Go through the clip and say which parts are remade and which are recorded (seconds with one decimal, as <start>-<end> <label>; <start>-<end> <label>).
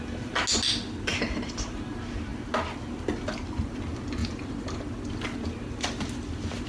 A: 0.0-1.1 recorded; 1.1-1.8 remade; 1.8-4.2 recorded; 4.2-4.8 remade; 4.8-6.7 recorded